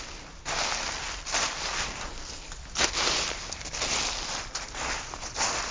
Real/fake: real